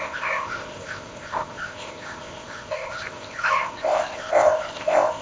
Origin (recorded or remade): remade